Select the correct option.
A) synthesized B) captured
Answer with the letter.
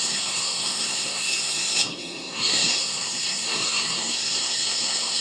A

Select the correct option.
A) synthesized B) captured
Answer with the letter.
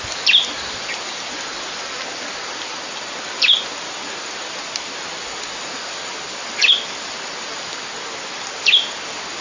B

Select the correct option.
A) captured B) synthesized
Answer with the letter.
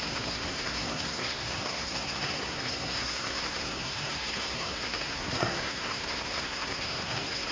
B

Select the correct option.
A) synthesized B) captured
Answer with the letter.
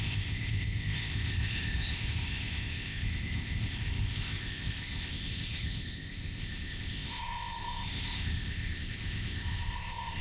A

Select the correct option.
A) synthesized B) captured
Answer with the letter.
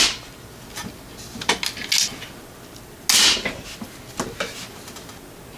B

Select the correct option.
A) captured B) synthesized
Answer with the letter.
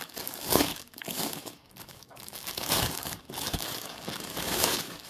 B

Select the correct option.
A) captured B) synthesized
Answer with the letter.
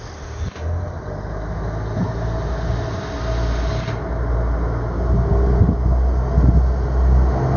A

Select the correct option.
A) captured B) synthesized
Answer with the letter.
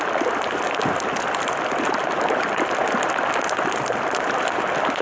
A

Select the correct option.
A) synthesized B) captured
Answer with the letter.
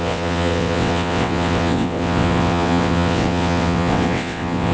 A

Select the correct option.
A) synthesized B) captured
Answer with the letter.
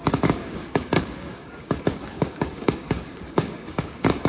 A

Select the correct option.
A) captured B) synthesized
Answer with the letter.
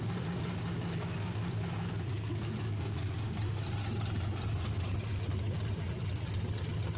A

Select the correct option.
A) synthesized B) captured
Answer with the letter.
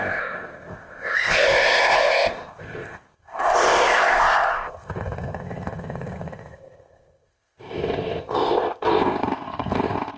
A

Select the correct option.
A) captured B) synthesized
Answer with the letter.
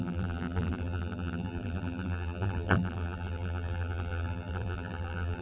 B